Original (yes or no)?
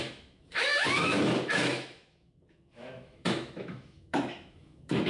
no